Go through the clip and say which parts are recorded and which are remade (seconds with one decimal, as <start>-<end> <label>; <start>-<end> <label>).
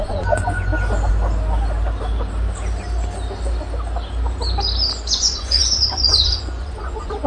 0.0-0.7 remade; 0.7-5.1 recorded; 5.1-7.3 remade